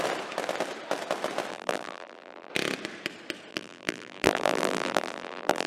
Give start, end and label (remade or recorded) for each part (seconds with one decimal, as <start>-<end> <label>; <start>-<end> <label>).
0.0-1.5 recorded; 1.5-2.5 remade; 2.5-3.5 recorded; 3.5-5.7 remade